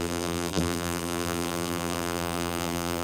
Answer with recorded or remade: remade